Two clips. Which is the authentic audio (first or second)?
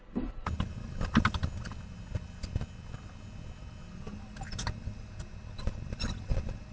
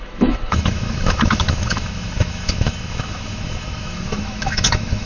first